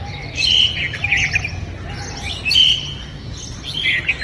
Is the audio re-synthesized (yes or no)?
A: no